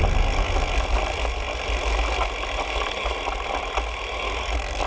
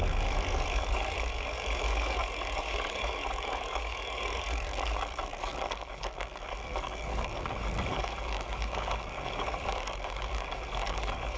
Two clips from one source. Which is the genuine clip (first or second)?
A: first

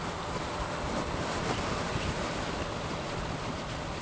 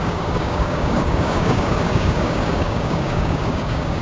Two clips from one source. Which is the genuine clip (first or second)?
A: first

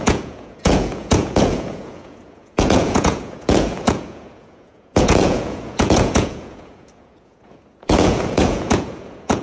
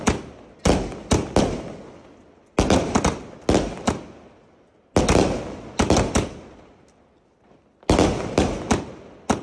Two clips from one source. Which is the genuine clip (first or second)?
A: second